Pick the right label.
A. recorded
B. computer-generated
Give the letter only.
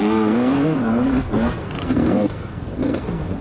B